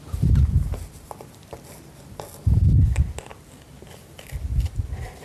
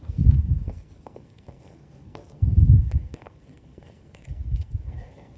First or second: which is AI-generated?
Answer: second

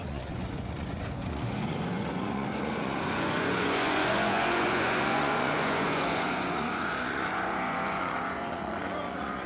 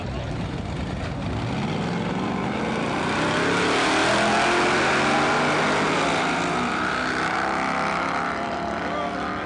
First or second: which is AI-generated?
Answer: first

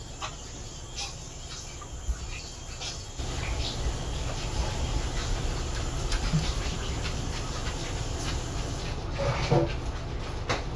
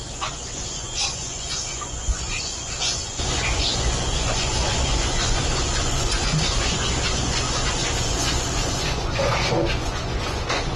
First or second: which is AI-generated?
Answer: second